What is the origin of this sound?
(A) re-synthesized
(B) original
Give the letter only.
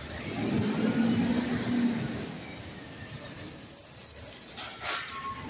B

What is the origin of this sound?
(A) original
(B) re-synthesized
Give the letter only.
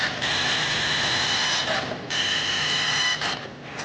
A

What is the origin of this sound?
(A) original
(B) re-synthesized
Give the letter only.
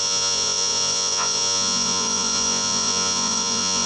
B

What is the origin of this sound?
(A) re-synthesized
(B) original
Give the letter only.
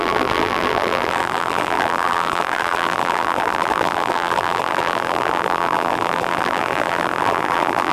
A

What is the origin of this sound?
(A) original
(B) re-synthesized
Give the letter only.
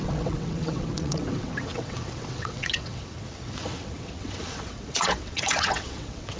B